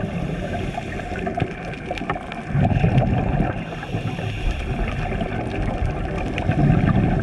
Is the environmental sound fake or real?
real